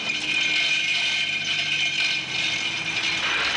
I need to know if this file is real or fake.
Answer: real